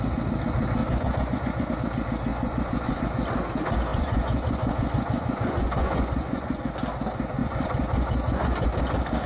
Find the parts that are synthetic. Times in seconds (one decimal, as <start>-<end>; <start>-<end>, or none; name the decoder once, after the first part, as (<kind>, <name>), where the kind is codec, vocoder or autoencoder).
0.8-1.7 (vocoder, Vocos); 2.3-3.0; 3.9-6.6; 7.4-8.7